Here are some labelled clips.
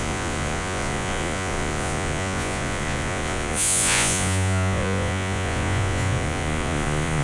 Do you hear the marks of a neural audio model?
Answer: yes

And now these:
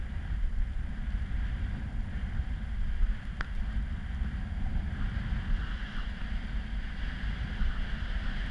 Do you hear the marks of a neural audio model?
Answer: no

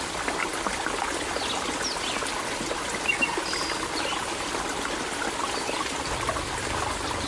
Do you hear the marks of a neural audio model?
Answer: no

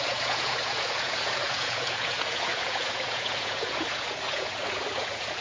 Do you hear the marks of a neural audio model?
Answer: yes